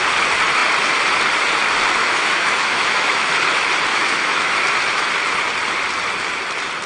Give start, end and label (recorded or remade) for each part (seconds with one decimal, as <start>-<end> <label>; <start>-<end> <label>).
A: 0.0-2.0 recorded; 2.0-3.3 remade; 3.3-3.9 recorded; 3.9-4.5 remade; 4.5-6.9 recorded